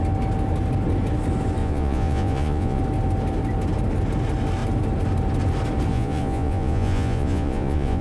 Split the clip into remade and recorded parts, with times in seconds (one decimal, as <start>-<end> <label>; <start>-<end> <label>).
0.0-1.6 recorded; 1.6-2.8 remade; 2.8-5.9 recorded; 5.9-8.0 remade